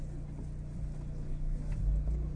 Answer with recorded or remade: recorded